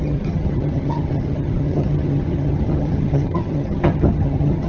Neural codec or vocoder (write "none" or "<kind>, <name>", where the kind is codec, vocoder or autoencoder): vocoder, HiFi-GAN